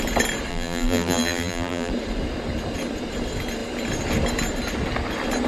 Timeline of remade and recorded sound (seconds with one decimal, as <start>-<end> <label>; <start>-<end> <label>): 0.0-0.5 recorded; 0.5-1.9 remade; 1.9-5.5 recorded